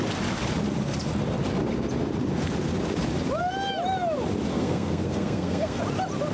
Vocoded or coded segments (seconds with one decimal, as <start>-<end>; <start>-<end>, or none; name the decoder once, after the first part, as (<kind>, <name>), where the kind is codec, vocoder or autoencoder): 4.5-5.8 (codec, SNAC)